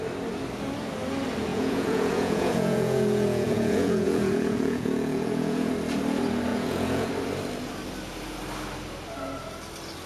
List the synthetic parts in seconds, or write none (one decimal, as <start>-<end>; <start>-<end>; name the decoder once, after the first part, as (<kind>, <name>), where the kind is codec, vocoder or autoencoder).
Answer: 1.5-5.7 (vocoder, Vocos); 6.5-7.1